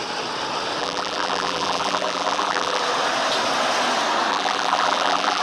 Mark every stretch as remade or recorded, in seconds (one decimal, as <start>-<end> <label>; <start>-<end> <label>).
0.0-0.8 recorded; 0.8-2.8 remade; 2.8-4.3 recorded; 4.3-5.4 remade